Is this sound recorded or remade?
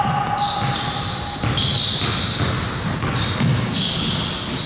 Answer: recorded